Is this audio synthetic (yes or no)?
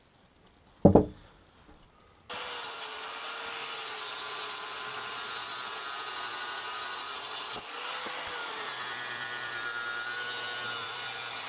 no